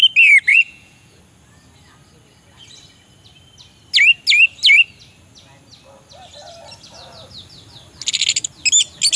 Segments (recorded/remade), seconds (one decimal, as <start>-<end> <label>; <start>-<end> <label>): 0.0-0.5 recorded; 0.5-1.2 remade; 1.2-9.2 recorded